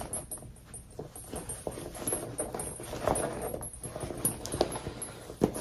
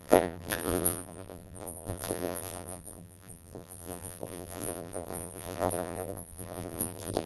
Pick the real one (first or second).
first